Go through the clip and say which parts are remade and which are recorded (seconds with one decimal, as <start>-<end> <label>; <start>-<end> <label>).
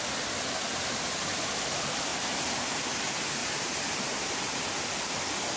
0.0-0.7 recorded; 0.7-1.5 remade; 1.5-2.1 recorded; 2.1-2.8 remade; 2.8-3.4 recorded; 3.4-4.7 remade; 4.7-5.6 recorded